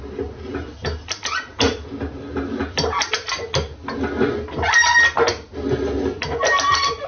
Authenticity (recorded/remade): recorded